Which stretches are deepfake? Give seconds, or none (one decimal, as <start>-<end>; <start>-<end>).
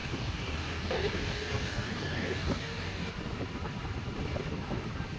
0.0-3.1